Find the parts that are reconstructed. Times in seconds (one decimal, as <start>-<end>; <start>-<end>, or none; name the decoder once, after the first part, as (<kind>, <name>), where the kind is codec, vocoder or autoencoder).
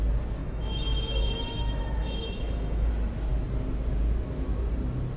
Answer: 0.4-2.9 (autoencoder, DAC-VAE)